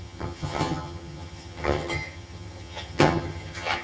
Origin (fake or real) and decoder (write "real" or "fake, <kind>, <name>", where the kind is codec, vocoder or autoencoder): fake, vocoder, HiFi-GAN